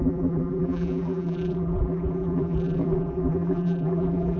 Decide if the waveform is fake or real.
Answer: fake